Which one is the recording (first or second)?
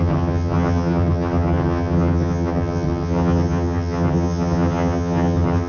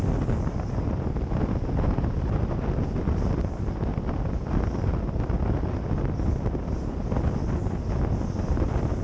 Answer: second